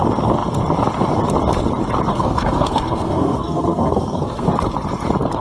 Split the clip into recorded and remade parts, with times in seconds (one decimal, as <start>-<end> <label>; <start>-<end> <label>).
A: 0.0-2.1 recorded; 2.1-4.5 remade; 4.5-5.4 recorded